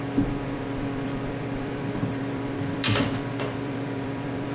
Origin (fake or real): fake